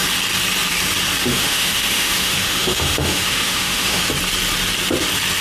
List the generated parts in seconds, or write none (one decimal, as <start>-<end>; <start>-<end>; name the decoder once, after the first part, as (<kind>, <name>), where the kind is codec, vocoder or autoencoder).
1.3-4.1 (autoencoder, DAC-VAE)